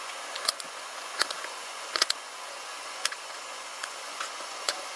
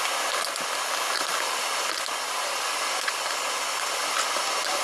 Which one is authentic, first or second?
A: second